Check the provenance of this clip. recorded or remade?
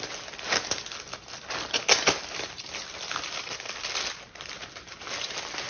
recorded